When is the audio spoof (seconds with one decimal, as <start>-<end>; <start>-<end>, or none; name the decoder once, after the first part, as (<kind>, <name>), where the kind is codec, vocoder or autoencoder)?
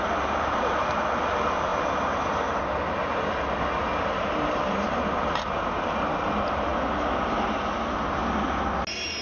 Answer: 0.0-1.7 (vocoder, BigVGAN v2); 4.2-6.7; 7.3-8.2